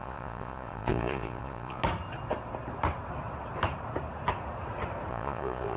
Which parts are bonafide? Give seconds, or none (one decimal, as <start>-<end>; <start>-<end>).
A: 1.8-5.1